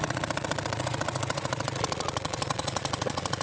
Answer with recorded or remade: remade